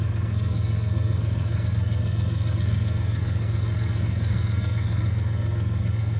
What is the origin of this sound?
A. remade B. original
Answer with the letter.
A